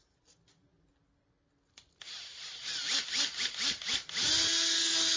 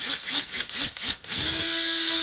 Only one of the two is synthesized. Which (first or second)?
second